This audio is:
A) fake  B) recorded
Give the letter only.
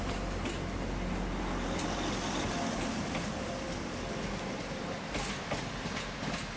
B